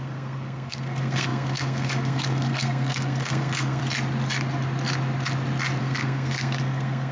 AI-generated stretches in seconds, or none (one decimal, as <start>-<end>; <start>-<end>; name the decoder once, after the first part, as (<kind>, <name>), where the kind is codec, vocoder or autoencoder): 0.0-3.8 (codec, SNAC); 5.8-7.1